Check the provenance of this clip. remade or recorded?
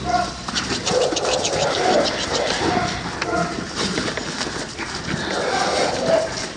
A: recorded